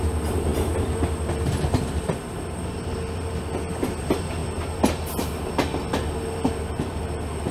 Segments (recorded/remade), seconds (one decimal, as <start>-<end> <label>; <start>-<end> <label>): 0.0-7.5 recorded